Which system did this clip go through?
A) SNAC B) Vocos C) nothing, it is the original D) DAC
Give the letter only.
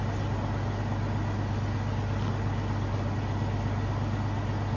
C